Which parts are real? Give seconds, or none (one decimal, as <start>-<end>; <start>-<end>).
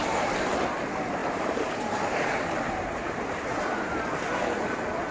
0.6-1.2; 3.8-5.1